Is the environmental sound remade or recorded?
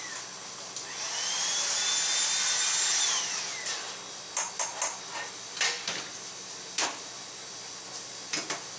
recorded